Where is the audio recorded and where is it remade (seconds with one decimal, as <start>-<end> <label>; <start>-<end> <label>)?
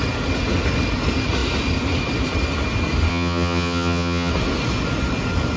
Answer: 0.0-3.1 recorded; 3.1-4.3 remade; 4.3-5.6 recorded